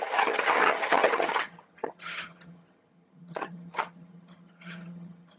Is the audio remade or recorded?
remade